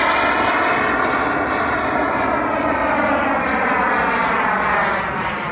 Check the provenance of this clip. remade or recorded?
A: recorded